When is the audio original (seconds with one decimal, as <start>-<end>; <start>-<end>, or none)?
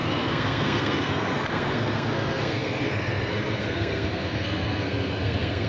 none